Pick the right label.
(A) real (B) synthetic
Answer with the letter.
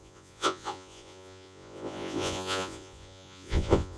B